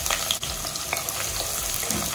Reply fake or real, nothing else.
real